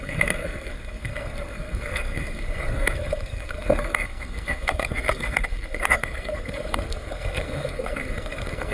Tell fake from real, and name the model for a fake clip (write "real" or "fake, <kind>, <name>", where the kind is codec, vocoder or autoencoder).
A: fake, codec, SNAC